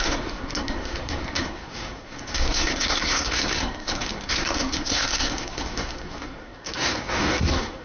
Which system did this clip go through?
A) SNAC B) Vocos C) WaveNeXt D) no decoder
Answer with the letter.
A